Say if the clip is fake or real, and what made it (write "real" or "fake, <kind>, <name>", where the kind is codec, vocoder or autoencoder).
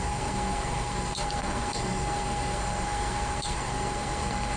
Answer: fake, codec, SNAC